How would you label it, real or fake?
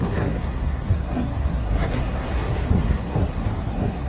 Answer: fake